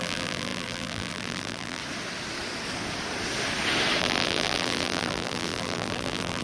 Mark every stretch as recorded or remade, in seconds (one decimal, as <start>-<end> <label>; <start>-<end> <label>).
0.0-1.8 remade; 1.8-4.0 recorded; 4.0-6.4 remade